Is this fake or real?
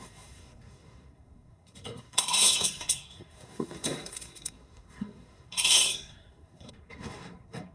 fake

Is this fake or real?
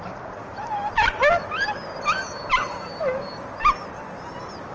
real